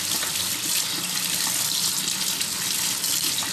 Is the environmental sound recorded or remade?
recorded